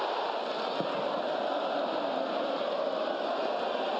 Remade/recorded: recorded